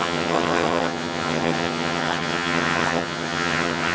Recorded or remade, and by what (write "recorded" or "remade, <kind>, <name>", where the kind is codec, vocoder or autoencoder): remade, vocoder, HiFi-GAN